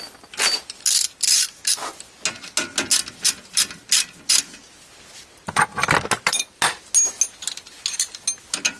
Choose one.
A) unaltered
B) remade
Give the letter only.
A